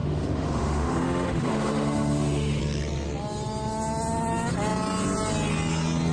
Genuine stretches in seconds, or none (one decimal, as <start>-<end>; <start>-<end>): 2.6-6.1